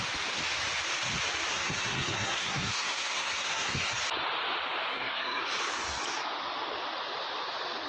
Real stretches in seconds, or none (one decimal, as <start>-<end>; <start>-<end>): 0.0-1.5; 4.0-4.9; 5.4-7.9